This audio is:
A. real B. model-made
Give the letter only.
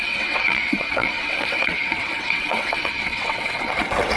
B